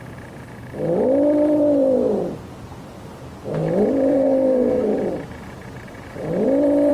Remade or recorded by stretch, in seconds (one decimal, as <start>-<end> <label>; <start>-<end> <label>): 0.0-4.1 recorded; 4.1-4.9 remade; 4.9-6.9 recorded